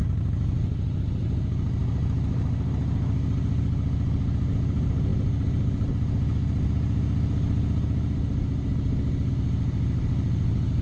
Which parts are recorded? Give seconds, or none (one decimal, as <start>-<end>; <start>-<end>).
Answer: 0.0-10.8